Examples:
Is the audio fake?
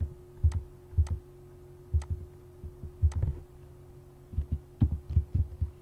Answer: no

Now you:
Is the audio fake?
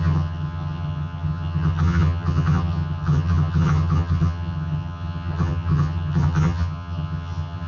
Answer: yes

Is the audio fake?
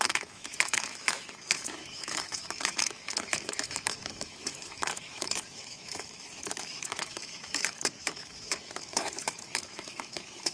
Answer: yes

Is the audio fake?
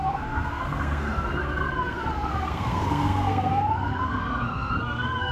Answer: yes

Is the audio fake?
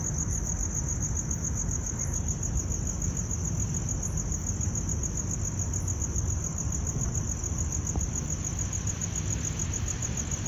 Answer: no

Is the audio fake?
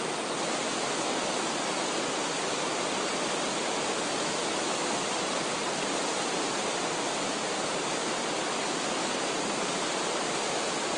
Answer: no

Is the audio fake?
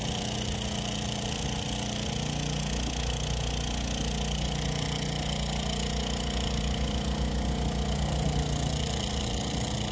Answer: no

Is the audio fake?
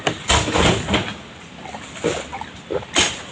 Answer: no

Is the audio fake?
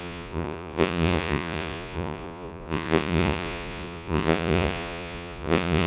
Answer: yes